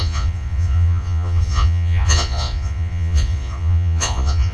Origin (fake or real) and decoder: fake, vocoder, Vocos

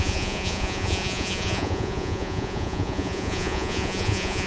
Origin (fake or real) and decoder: fake, vocoder, Vocos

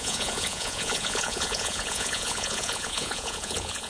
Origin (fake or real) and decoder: fake, vocoder, Vocos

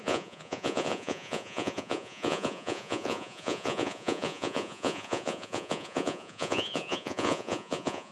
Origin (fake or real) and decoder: fake, vocoder, Vocos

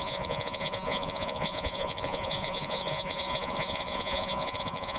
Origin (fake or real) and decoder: fake, vocoder, Vocos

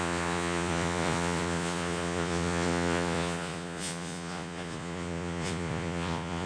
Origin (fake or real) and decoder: fake, vocoder, Vocos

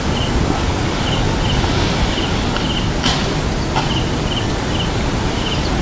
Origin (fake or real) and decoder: real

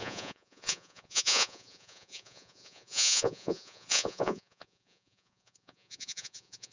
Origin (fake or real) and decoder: fake, vocoder, Vocos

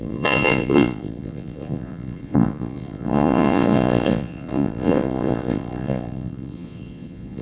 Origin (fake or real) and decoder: fake, vocoder, Vocos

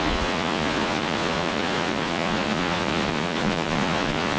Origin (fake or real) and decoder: fake, vocoder, Vocos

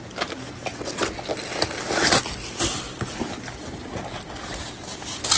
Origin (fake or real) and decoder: real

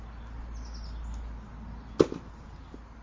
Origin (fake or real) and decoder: real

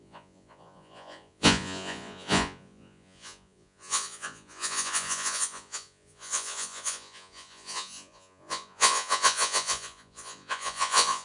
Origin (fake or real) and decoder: fake, vocoder, Vocos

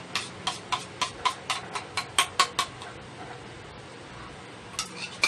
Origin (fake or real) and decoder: real